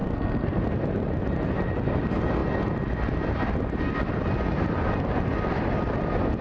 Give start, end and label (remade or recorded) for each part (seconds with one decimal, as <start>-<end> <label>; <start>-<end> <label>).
0.0-0.6 remade; 0.6-6.4 recorded